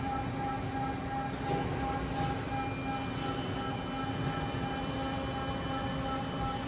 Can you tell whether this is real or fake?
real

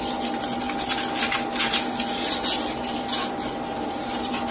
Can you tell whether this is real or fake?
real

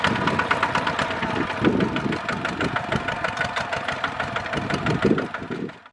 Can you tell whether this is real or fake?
real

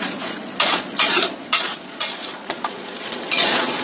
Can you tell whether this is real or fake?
fake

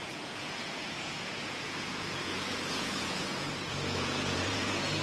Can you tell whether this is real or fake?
fake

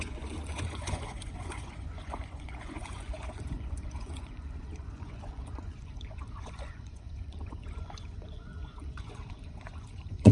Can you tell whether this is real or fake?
fake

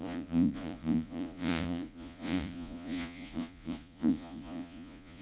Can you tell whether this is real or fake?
fake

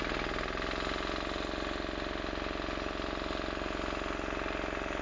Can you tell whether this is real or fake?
real